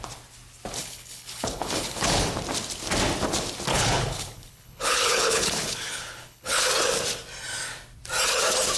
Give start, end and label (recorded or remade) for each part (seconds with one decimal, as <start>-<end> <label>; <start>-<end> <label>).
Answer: 0.0-0.8 recorded; 0.8-2.3 remade; 2.3-3.7 recorded; 3.7-6.7 remade; 6.7-8.8 recorded